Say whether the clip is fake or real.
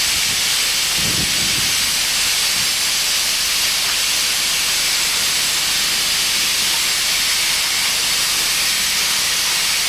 real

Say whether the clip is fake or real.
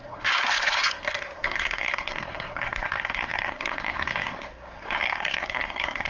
fake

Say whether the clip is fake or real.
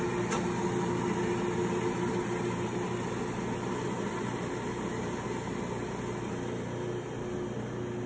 real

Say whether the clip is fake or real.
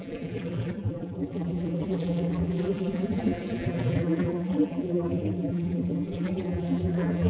fake